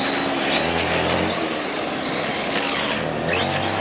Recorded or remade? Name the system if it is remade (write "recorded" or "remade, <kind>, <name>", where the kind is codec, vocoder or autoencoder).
recorded